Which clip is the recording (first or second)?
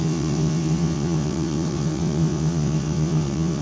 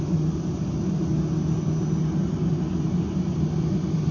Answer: second